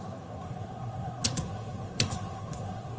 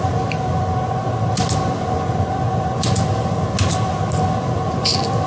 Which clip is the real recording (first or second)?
second